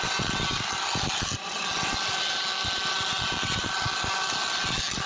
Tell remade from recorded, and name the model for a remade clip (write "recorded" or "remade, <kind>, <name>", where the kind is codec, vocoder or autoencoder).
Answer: recorded